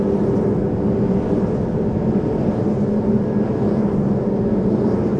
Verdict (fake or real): real